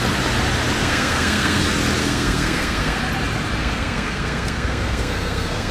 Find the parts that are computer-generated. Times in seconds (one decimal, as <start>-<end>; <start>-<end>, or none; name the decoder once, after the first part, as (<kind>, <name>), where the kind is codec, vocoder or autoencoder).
0.8-1.6 (codec, SNAC); 2.0-3.0; 3.6-5.7